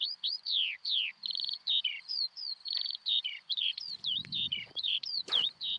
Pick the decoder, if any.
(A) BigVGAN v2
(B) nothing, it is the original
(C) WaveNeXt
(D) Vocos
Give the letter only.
D